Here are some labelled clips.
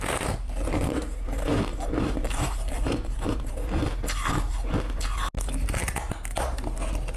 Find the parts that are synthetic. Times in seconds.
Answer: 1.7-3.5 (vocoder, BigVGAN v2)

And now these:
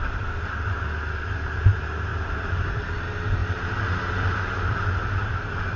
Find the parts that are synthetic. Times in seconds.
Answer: 2.1-2.7 (vocoder, BigVGAN v2); 3.4-5.8